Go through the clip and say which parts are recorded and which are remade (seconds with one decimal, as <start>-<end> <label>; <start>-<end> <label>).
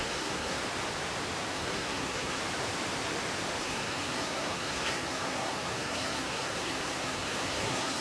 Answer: 0.0-0.6 remade; 0.6-1.5 recorded; 1.5-2.4 remade; 2.4-3.6 recorded; 3.6-8.0 remade